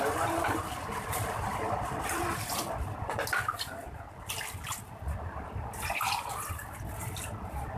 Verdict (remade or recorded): remade